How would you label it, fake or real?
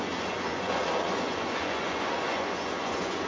fake